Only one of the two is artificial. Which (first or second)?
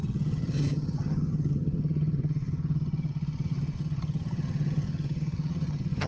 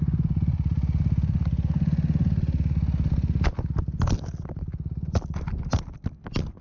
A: first